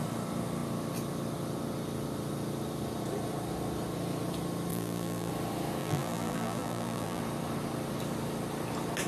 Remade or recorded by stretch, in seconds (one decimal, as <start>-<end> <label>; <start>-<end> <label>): 0.0-4.7 recorded; 4.7-5.3 remade; 5.3-5.8 recorded; 5.8-7.2 remade; 7.2-9.1 recorded